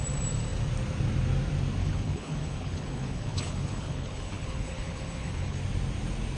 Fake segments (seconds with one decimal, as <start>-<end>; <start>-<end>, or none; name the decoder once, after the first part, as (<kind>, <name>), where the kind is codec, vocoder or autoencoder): 1.8-5.6 (codec, HILCodec)

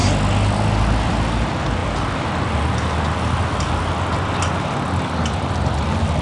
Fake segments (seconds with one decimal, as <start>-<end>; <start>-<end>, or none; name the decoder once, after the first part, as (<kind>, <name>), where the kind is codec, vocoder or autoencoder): none

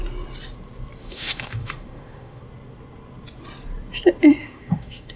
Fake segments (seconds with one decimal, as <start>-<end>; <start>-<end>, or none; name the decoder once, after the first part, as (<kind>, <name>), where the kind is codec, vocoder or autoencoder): 1.0-2.4 (autoencoder, DAC-VAE); 4.4-5.2